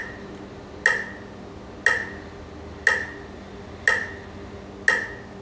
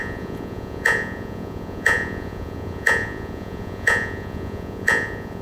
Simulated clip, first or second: second